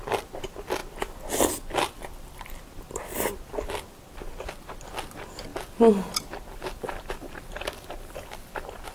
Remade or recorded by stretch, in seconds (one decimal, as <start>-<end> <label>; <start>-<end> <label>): 0.0-8.9 recorded